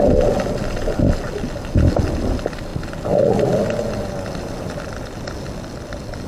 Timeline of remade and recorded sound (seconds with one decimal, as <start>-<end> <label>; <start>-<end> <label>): 0.0-6.3 recorded